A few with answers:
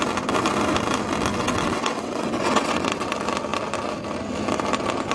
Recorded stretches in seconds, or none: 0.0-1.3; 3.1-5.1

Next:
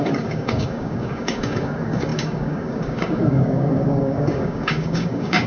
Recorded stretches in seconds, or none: none

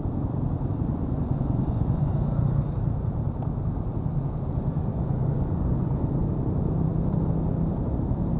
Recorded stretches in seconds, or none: 0.0-0.9; 2.1-4.9; 6.3-8.4

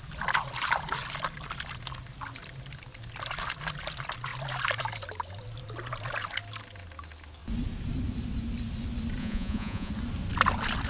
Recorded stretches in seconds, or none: 0.0-9.2; 9.9-10.9

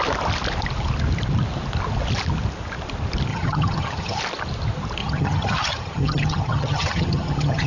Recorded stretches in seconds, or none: 0.0-3.3; 4.2-5.0

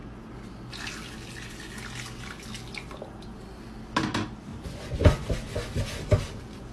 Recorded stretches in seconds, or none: 0.0-4.5; 5.3-6.7

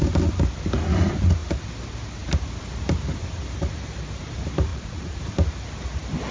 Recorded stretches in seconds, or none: 0.0-4.7; 5.2-6.3

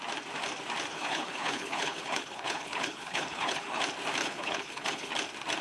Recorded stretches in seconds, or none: 0.0-0.9; 3.8-4.2; 5.1-5.6